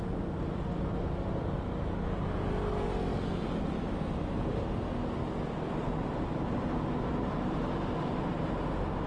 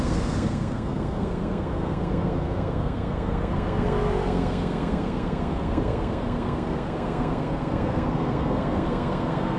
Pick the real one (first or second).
first